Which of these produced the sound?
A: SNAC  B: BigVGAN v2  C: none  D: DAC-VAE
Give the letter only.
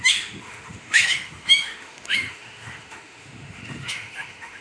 D